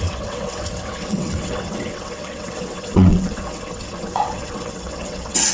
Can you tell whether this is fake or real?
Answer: fake